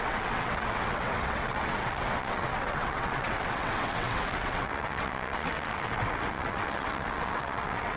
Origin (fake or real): fake